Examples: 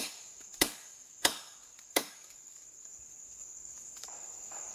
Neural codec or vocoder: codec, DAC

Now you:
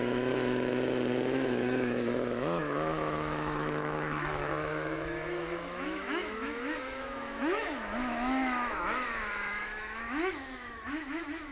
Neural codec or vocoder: autoencoder, DAC-VAE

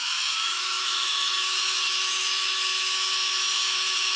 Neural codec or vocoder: autoencoder, DAC-VAE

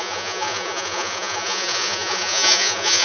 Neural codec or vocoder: vocoder, Vocos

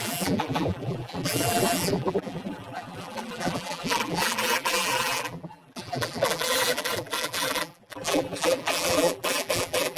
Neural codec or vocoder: vocoder, BigVGAN v2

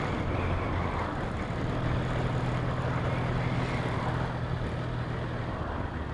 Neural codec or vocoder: none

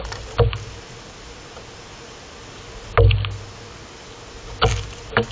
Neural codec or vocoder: none